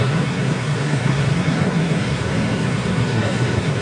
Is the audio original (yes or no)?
no